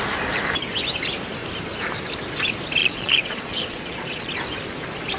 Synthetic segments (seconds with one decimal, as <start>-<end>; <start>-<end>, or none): 2.8-4.3